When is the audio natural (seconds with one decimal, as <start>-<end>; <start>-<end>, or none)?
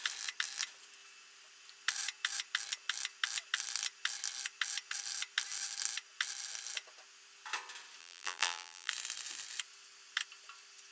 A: 0.0-8.0; 8.9-10.9